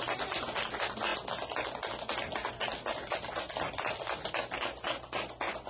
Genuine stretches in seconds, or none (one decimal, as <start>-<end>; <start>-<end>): 0.0-5.7